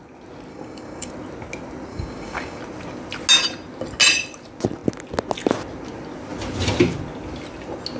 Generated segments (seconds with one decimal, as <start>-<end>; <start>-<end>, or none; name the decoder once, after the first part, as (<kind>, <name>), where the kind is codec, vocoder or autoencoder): 0.5-1.1 (codec, DAC); 1.9-2.6